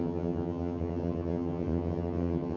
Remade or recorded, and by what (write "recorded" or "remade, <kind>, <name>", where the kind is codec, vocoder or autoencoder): remade, vocoder, HiFi-GAN